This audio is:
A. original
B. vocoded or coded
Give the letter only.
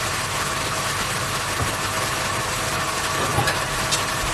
A